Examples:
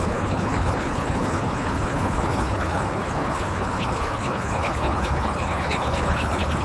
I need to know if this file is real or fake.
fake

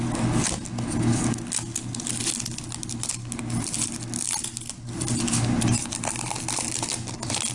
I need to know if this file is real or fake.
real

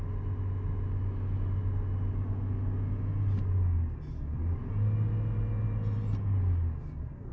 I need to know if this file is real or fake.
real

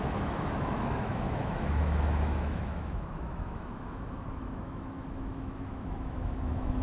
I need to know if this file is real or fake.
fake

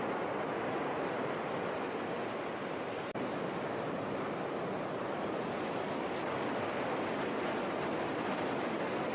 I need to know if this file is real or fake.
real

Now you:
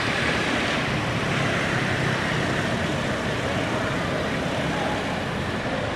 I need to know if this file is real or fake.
fake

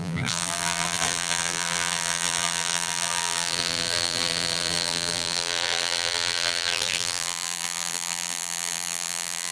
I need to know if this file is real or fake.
fake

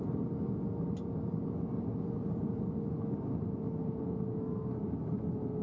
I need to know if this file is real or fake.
real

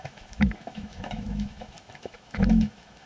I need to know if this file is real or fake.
fake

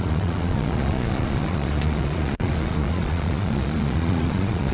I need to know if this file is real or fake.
fake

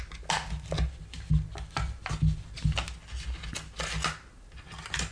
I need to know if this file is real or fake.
real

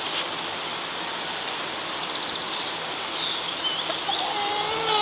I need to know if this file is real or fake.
fake